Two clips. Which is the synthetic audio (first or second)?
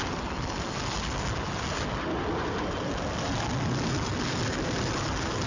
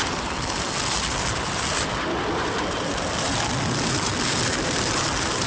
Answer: second